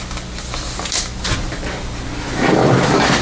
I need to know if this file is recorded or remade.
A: recorded